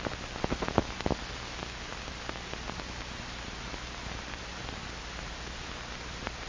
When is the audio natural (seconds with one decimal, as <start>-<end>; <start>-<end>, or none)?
0.0-6.5

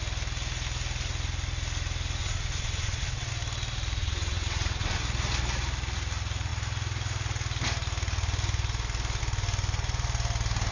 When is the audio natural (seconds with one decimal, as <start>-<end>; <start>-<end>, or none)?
0.0-2.2; 3.3-4.0; 5.0-10.7

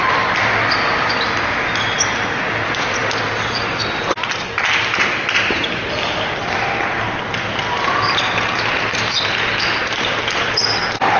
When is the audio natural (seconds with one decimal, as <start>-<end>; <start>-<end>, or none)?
0.0-11.2

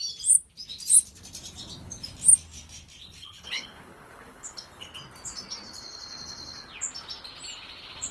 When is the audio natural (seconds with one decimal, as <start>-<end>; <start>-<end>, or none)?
0.0-3.0; 4.9-8.1

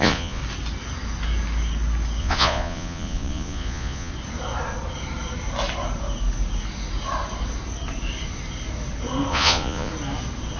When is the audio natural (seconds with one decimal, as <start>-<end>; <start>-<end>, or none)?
0.4-2.2; 4.1-9.3; 9.9-10.6

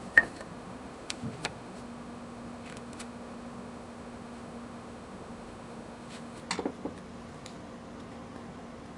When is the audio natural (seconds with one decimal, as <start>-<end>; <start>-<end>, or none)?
6.4-9.0